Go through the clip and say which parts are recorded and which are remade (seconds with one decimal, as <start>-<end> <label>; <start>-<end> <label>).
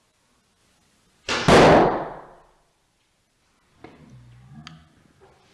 0.0-5.5 recorded